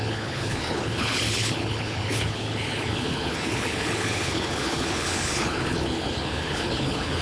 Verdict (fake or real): fake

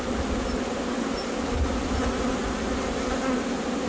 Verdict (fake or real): real